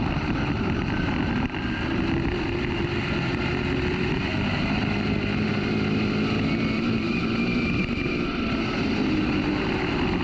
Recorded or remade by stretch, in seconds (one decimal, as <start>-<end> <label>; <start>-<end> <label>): 0.0-10.2 recorded